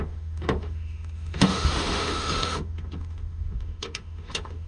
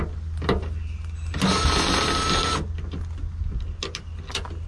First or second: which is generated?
first